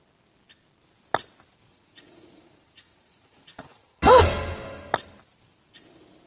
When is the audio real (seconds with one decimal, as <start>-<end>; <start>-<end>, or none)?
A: 0.0-1.7; 4.2-6.3